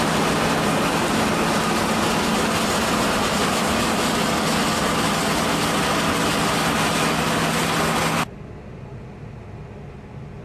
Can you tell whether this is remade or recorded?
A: recorded